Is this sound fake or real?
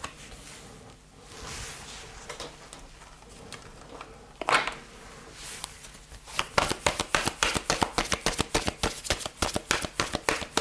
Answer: real